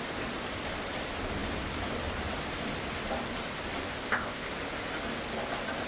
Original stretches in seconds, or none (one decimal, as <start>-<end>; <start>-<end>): 0.0-4.0; 4.5-5.9